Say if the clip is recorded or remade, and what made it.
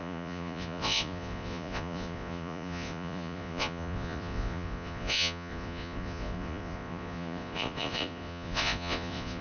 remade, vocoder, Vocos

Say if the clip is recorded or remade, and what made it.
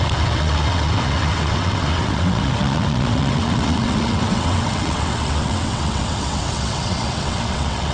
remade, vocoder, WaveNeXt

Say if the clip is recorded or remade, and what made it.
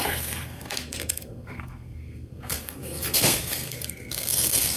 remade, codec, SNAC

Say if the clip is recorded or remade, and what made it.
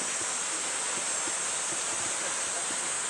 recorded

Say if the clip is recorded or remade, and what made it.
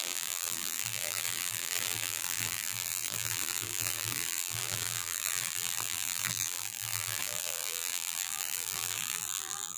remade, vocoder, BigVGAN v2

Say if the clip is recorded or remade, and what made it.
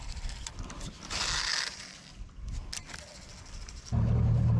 recorded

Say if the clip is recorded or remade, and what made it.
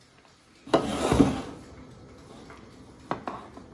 recorded